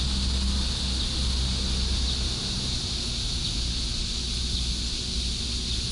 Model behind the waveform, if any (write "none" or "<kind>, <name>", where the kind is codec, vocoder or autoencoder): none